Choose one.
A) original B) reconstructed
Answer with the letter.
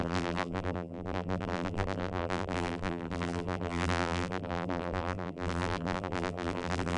B